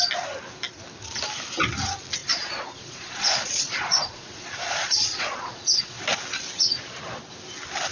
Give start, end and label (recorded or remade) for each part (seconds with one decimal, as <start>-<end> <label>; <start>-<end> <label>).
0.0-2.2 recorded; 2.2-6.0 remade; 6.0-7.9 recorded